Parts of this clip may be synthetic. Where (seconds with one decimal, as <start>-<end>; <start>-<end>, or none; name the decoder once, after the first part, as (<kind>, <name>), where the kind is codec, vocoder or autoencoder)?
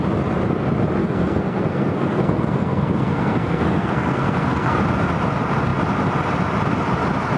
1.0-4.8 (codec, SNAC)